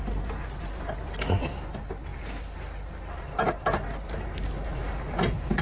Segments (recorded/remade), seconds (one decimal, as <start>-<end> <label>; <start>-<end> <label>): 0.0-5.6 recorded